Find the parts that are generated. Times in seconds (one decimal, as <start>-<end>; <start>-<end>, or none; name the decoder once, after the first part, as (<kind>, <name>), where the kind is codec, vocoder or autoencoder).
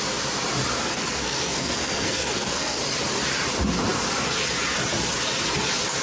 0.8-2.8 (codec, SNAC)